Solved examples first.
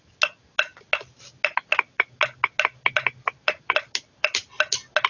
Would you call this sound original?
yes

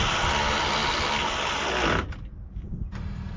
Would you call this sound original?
yes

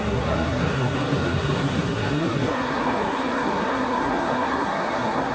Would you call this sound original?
no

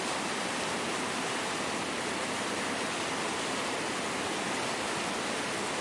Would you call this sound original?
yes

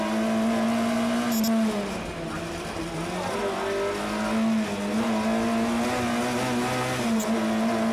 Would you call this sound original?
yes